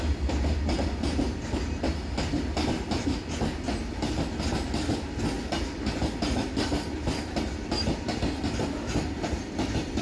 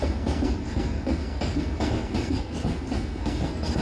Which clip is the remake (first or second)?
second